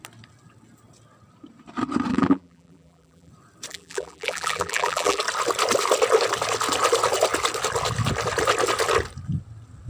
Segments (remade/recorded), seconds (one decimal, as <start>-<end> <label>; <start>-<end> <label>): 0.0-2.1 recorded; 2.1-3.3 remade; 3.3-3.7 recorded; 3.7-5.2 remade; 5.2-9.9 recorded